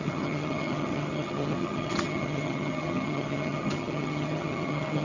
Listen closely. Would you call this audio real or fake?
fake